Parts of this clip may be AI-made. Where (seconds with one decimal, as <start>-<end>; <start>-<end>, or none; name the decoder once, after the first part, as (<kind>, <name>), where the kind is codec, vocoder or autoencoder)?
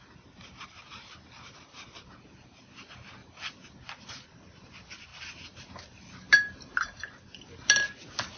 none